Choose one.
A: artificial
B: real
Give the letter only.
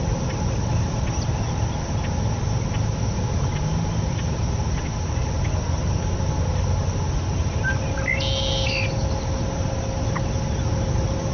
B